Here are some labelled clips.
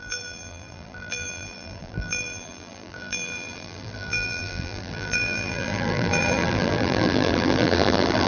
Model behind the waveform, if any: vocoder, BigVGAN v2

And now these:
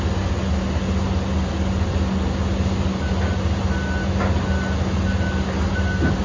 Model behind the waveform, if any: none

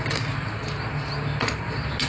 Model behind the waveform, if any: none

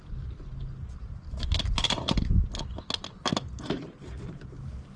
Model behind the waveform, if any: none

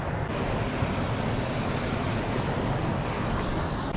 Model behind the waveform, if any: none